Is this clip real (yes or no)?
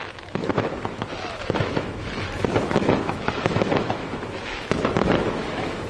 no